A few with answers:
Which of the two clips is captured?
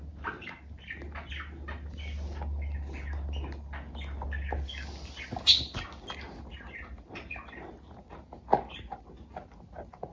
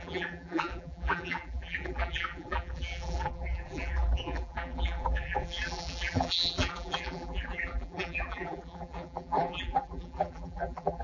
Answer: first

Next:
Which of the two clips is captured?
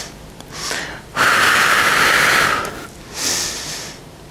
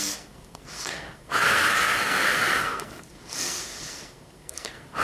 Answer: first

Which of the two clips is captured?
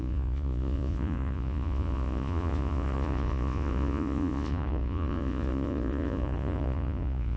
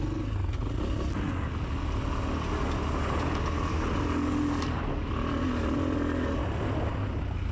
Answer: second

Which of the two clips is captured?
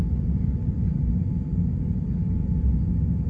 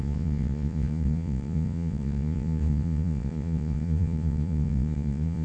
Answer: first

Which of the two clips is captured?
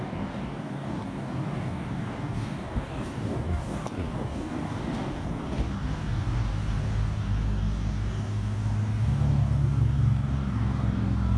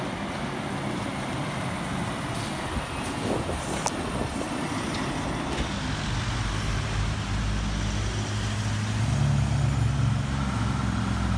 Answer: second